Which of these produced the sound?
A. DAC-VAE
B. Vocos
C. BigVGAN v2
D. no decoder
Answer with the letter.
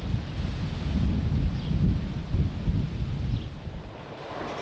D